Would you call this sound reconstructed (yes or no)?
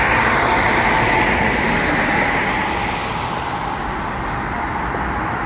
no